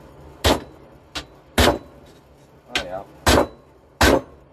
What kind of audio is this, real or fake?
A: real